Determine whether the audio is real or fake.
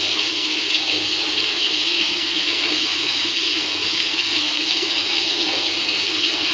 fake